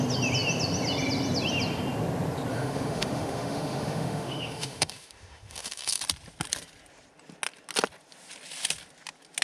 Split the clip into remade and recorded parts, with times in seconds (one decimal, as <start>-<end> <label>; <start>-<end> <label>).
0.0-2.5 recorded; 2.5-6.0 remade; 6.0-9.4 recorded